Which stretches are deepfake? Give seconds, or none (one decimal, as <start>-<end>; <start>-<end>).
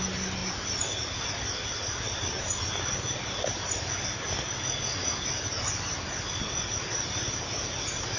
none